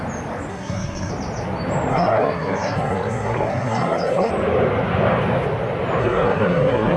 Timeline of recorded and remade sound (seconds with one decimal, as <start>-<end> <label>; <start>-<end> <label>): 0.0-0.5 recorded; 0.5-1.1 remade; 1.1-1.9 recorded; 1.9-4.3 remade; 4.3-6.0 recorded; 6.0-7.0 remade